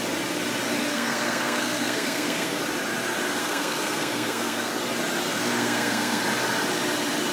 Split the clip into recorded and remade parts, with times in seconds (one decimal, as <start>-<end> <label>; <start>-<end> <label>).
0.0-0.9 recorded; 0.9-2.6 remade; 2.6-3.4 recorded; 3.4-4.7 remade; 4.7-5.3 recorded; 5.3-6.2 remade; 6.2-7.3 recorded